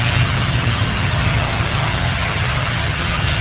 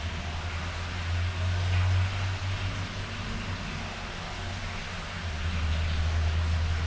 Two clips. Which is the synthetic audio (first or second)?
first